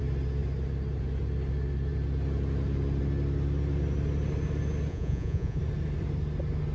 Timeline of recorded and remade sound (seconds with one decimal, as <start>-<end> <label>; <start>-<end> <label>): 0.0-4.9 recorded; 4.9-5.6 remade; 5.6-6.7 recorded